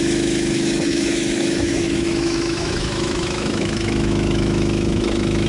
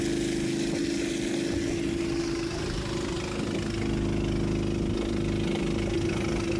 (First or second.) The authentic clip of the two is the second